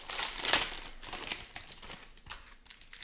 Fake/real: real